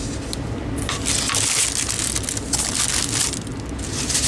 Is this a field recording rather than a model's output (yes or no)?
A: yes